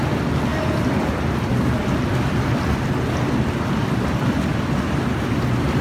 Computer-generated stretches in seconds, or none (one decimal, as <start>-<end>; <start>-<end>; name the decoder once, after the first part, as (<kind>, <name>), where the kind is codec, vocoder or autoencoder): none

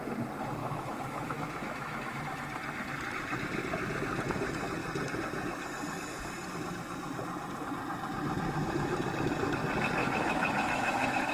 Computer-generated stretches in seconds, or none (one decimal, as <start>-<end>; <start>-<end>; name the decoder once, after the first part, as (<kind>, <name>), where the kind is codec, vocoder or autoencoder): 0.6-2.2 (autoencoder, DAC-VAE); 10.0-11.3

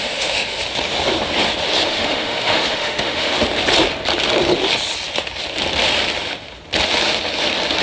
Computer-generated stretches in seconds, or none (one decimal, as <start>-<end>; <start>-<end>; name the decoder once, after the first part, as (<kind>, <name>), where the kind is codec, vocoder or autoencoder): 0.0-0.6 (autoencoder, DAC-VAE); 1.9-3.3

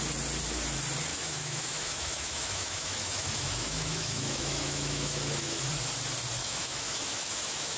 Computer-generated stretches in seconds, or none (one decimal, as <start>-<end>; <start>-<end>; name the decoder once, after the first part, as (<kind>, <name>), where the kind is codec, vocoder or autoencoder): 1.1-5.7 (autoencoder, DAC-VAE); 6.4-7.8

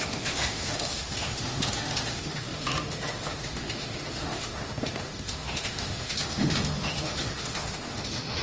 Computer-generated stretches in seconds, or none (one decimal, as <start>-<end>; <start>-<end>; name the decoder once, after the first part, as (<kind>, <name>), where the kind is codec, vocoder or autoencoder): 0.0-8.4 (autoencoder, DAC-VAE)